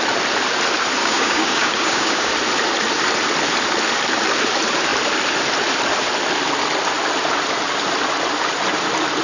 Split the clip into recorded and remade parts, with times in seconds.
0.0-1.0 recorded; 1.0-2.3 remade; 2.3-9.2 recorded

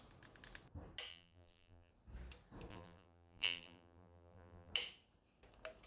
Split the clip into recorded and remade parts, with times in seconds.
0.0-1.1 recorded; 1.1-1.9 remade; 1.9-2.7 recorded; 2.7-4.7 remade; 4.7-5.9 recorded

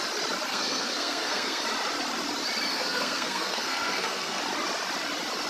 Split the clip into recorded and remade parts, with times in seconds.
0.0-0.5 recorded; 0.5-1.6 remade; 1.6-2.7 recorded; 2.7-4.4 remade; 4.4-5.5 recorded

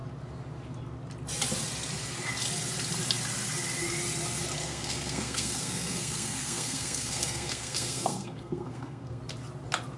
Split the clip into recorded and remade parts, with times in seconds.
0.0-4.6 recorded; 4.6-9.2 remade; 9.2-10.0 recorded

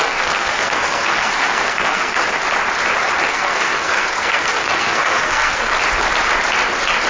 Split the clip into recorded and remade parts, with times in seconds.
0.0-2.2 remade; 2.2-3.3 recorded; 3.3-5.7 remade; 5.7-7.1 recorded